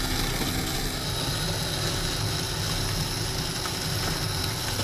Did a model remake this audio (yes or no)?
no